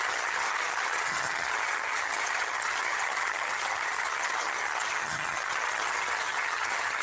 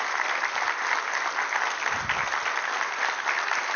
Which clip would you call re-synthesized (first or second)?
first